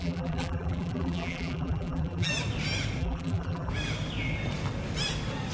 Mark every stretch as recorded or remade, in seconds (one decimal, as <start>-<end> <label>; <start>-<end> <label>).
0.0-2.3 remade; 2.3-3.0 recorded; 3.0-3.7 remade; 3.7-5.5 recorded